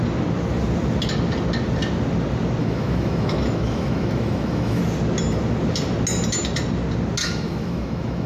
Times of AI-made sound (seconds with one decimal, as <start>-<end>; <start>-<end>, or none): 2.6-4.8; 7.2-8.3